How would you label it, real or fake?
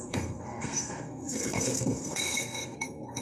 fake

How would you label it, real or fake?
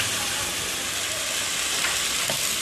real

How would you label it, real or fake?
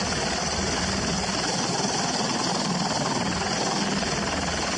real